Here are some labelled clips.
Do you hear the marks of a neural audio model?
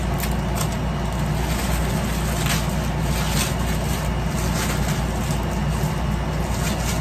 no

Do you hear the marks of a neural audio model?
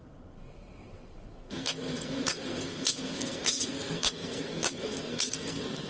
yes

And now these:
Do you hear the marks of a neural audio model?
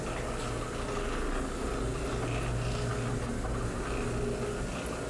no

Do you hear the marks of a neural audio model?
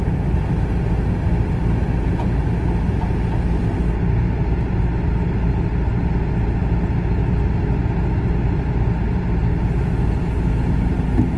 no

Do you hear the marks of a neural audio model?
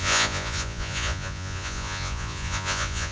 yes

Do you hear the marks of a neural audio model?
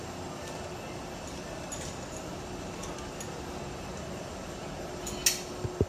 no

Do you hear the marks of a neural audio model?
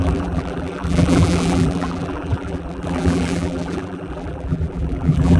yes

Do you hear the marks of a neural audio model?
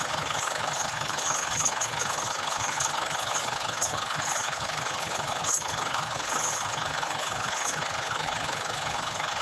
yes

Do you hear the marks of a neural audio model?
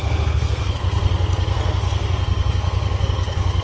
yes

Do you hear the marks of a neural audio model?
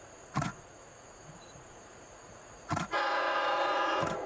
yes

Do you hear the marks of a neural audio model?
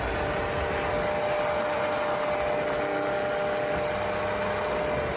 no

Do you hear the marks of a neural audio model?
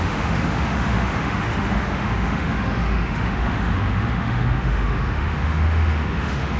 yes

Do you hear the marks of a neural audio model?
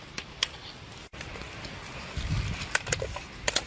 no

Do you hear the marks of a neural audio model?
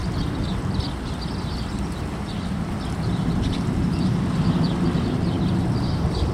yes